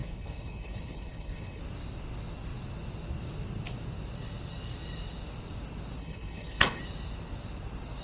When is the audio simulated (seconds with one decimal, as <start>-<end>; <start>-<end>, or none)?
0.0-1.6; 6.0-6.8